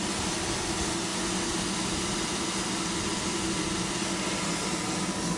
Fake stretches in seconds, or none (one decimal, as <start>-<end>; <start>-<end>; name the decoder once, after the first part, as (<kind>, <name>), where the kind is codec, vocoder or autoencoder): none